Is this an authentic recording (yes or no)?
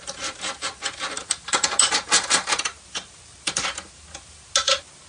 yes